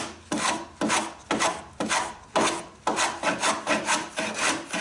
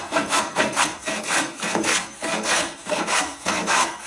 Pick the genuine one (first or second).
first